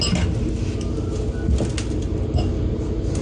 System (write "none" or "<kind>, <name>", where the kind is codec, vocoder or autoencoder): none